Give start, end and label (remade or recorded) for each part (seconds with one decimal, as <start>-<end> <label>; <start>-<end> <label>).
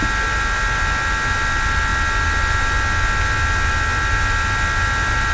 0.0-5.3 recorded